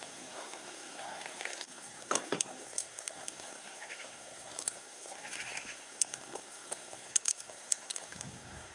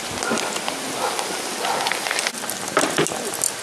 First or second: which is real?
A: second